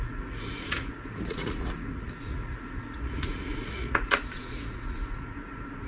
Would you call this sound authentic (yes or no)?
no